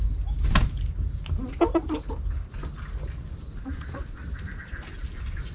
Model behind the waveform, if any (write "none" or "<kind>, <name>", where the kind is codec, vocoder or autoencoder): none